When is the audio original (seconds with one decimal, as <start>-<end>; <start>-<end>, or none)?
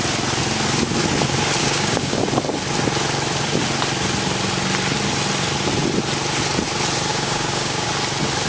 0.0-1.6; 2.2-7.1; 7.9-8.5